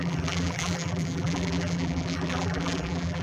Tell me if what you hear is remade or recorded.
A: remade